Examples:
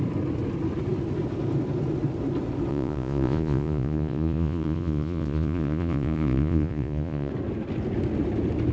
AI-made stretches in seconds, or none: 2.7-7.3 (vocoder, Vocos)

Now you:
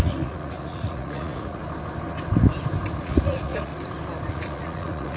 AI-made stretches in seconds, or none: 0.0-1.6 (vocoder, Vocos); 3.0-3.7; 4.3-5.2

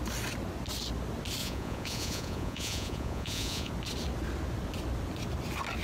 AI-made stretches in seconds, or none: 1.4-3.7 (vocoder, Vocos)

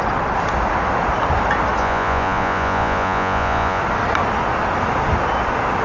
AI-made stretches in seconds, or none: 1.8-3.8 (vocoder, Vocos)

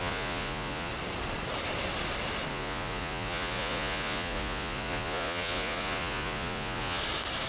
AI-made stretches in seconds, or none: 0.0-0.9 (vocoder, Vocos); 2.5-7.0